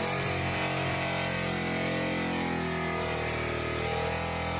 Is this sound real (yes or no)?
yes